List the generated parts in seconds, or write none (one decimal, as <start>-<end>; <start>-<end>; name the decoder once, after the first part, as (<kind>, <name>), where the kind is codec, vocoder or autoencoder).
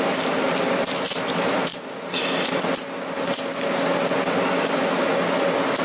none